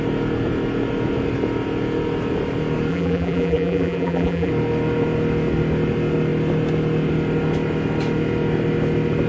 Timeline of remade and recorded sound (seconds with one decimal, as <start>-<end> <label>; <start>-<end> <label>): 0.0-2.9 recorded; 2.9-4.5 remade; 4.5-9.3 recorded